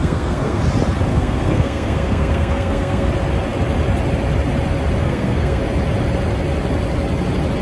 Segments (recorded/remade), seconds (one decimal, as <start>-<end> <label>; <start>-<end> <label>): 0.0-0.6 remade; 0.6-1.1 recorded; 1.1-3.1 remade; 3.1-5.0 recorded; 5.0-5.6 remade; 5.6-7.6 recorded